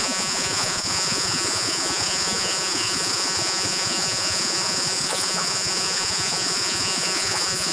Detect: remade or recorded remade